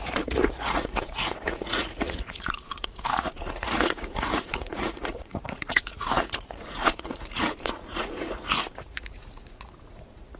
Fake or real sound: fake